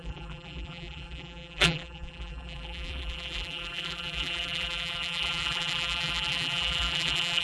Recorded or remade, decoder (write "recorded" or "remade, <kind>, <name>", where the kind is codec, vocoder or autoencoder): remade, vocoder, BigVGAN v2